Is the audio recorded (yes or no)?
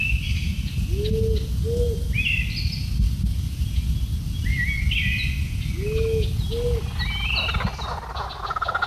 yes